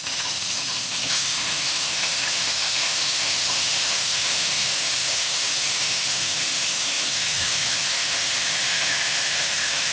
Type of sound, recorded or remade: remade